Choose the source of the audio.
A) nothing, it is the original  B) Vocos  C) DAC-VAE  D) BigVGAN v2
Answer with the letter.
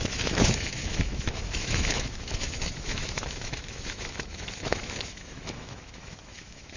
C